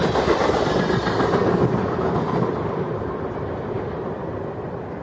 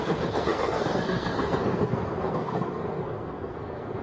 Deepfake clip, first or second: second